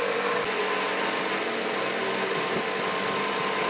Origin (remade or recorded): recorded